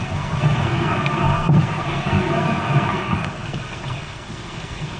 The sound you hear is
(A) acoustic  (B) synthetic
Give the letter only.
B